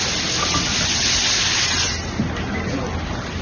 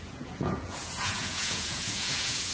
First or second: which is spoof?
second